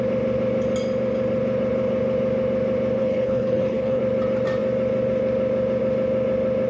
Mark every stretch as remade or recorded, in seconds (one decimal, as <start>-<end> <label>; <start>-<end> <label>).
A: 0.0-3.0 recorded; 3.0-4.0 remade; 4.0-6.7 recorded